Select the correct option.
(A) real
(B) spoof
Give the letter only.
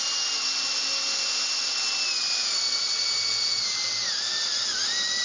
A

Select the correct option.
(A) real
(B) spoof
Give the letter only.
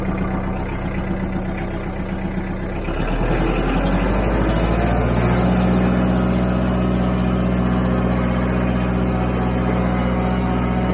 A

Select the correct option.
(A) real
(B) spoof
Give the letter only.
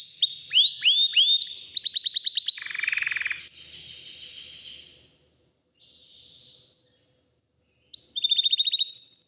A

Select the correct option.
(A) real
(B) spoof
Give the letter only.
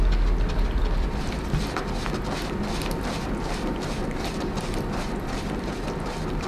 A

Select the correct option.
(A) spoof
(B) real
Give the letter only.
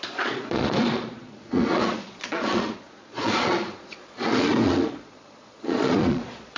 A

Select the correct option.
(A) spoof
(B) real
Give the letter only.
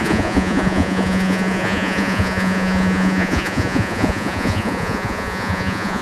A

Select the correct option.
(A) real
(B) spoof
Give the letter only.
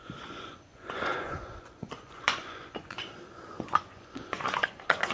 B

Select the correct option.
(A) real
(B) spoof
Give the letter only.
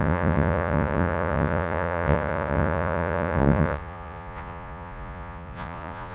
B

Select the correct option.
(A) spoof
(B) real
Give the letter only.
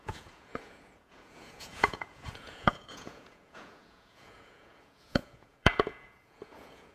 A